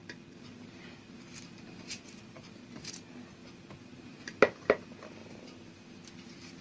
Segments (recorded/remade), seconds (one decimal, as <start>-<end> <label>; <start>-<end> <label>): 0.0-3.4 recorded; 3.4-4.2 remade; 4.2-5.2 recorded; 5.2-6.1 remade; 6.1-6.6 recorded